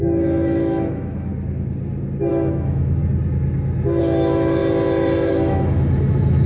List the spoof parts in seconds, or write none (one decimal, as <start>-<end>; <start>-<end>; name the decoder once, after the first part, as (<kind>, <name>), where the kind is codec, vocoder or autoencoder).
0.0-1.3 (autoencoder, DAC-VAE); 2.3-3.0; 4.0-4.6; 5.3-6.5